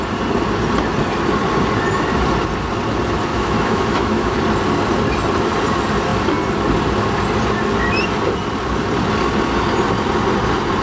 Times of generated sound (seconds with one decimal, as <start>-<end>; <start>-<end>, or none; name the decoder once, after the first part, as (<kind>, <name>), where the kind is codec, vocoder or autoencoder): 3.3-4.4 (autoencoder, DAC-VAE)